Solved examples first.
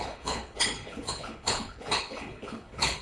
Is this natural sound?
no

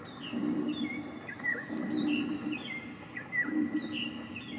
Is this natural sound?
yes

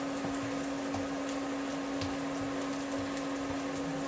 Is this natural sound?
yes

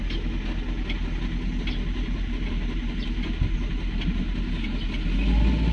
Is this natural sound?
yes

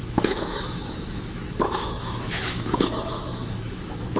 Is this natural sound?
no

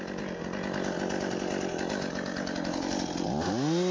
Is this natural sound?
yes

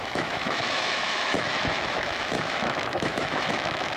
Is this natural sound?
no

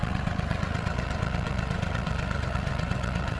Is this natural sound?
no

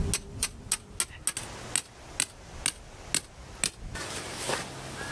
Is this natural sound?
yes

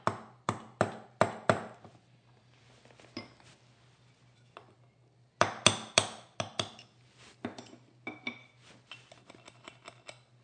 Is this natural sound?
yes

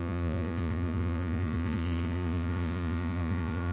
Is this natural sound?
no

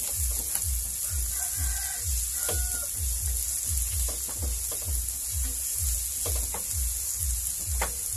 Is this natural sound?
yes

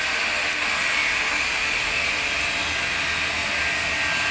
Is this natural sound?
yes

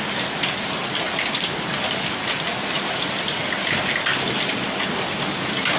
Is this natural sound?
yes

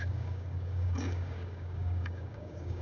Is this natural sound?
no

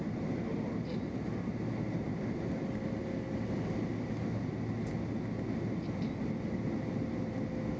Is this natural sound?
yes